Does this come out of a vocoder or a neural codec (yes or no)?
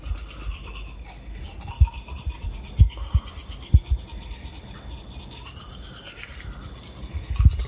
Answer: no